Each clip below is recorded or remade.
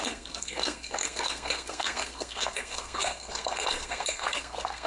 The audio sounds remade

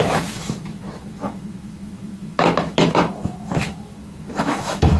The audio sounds remade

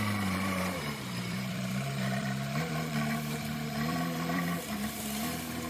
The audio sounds remade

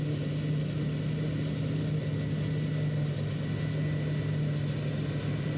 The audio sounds recorded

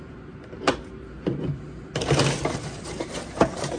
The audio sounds remade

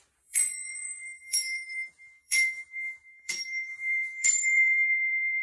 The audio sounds remade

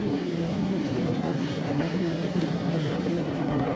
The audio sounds remade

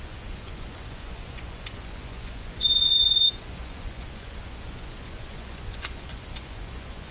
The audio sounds remade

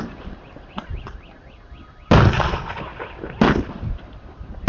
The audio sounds recorded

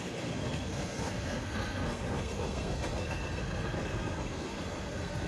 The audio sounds remade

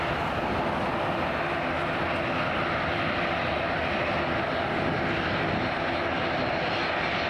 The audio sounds recorded